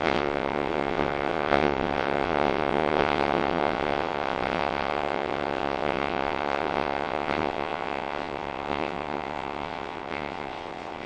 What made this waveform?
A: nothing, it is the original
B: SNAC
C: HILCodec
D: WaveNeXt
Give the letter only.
D